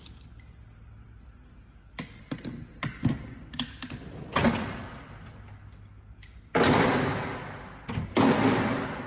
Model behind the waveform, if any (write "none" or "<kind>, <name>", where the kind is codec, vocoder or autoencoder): none